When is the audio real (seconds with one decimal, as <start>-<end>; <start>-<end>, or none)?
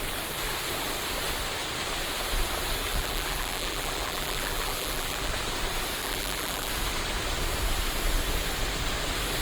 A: 0.0-2.9; 5.3-6.0; 6.7-9.4